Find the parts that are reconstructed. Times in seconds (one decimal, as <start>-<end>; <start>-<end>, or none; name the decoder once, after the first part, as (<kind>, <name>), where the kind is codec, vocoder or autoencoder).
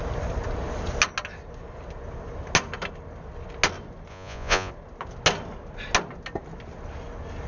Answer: 4.1-4.7 (vocoder, Vocos)